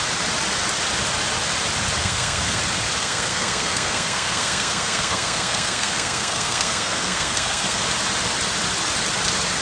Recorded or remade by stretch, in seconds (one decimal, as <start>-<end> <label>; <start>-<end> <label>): 0.0-2.0 recorded; 2.0-2.6 remade; 2.6-3.0 recorded; 3.0-7.8 remade; 7.8-9.6 recorded